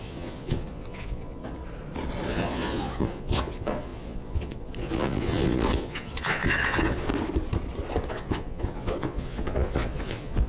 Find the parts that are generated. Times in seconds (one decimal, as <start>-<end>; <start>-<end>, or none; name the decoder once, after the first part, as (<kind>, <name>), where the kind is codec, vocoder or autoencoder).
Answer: 0.0-1.6 (vocoder, Vocos); 2.3-7.1; 8.1-10.5